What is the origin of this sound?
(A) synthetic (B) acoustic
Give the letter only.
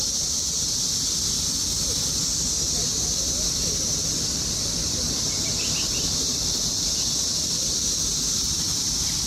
B